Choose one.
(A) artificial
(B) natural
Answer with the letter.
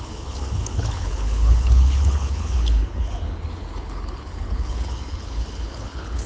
A